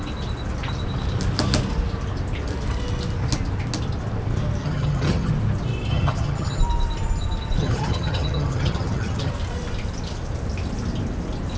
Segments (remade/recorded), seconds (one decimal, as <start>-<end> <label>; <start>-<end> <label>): 0.0-4.6 recorded; 4.6-5.3 remade; 5.3-5.9 recorded; 5.9-6.6 remade; 6.6-7.6 recorded; 7.6-9.3 remade; 9.3-11.6 recorded